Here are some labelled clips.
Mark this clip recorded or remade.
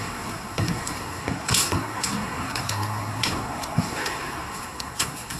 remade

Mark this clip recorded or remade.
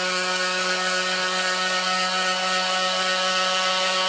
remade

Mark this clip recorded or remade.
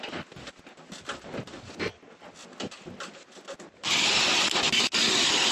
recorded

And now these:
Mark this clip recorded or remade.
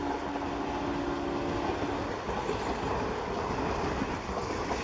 recorded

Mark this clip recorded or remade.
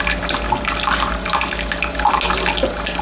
recorded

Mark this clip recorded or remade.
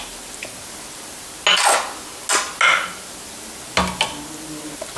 recorded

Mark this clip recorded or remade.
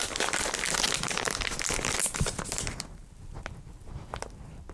recorded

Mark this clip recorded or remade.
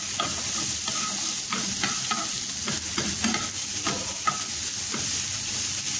recorded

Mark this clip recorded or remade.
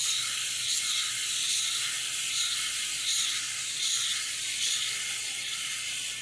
recorded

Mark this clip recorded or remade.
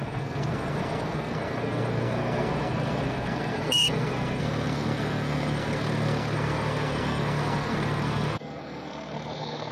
remade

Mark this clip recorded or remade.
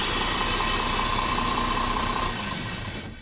remade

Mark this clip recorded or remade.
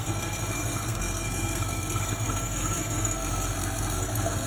remade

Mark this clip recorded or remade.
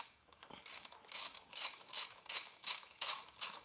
remade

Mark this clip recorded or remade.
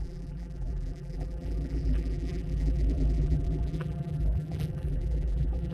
remade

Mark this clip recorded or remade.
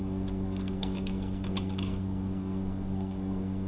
remade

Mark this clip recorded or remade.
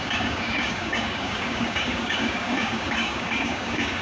remade